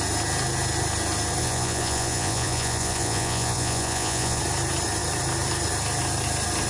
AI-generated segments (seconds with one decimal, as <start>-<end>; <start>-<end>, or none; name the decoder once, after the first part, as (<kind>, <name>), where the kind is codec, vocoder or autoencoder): 1.4-4.4 (vocoder, Vocos)